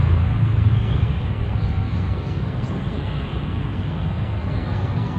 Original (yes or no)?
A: no